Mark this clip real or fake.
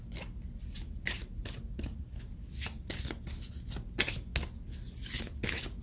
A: real